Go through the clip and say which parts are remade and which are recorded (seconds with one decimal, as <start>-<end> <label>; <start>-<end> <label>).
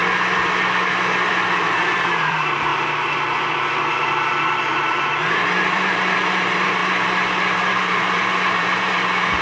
0.0-1.3 recorded; 1.3-6.8 remade; 6.8-7.7 recorded; 7.7-9.4 remade